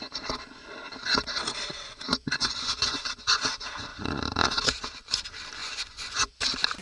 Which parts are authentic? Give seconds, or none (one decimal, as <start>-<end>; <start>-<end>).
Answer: 0.0-1.7; 3.3-3.9; 4.5-5.6; 6.3-6.8